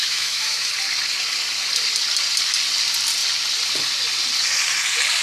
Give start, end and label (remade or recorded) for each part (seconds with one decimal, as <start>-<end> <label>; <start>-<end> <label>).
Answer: 0.0-0.7 remade; 0.7-5.2 recorded

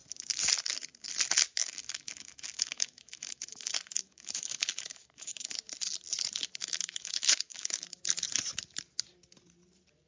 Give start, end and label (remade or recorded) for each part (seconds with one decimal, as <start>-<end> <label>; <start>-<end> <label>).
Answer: 0.0-1.6 recorded; 1.6-5.5 remade; 5.5-6.6 recorded; 6.6-8.0 remade; 8.0-10.1 recorded

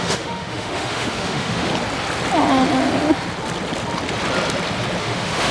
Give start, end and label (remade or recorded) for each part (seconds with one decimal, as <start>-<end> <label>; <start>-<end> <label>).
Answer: 0.0-1.7 remade; 1.7-5.0 recorded; 5.0-5.5 remade

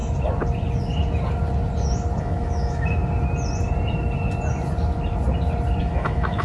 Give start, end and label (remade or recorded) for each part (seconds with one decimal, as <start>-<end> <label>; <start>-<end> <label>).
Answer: 0.0-2.2 recorded; 2.2-3.0 remade; 3.0-5.8 recorded; 5.8-6.4 remade

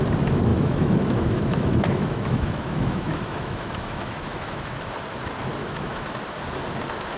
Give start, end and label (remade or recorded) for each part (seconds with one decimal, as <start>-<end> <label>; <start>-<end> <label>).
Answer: 0.0-0.5 recorded; 0.5-4.8 remade; 4.8-5.6 recorded; 5.6-6.2 remade; 6.2-7.2 recorded